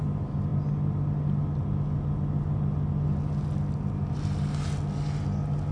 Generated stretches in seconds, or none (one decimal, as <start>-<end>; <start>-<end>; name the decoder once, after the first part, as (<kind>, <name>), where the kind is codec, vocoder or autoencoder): none